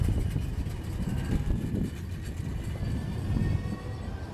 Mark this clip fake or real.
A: real